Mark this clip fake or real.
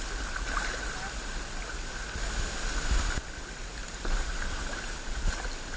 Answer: real